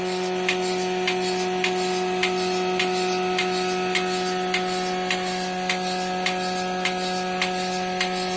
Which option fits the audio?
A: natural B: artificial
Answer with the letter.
A